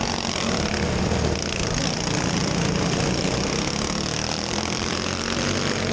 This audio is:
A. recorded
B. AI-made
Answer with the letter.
A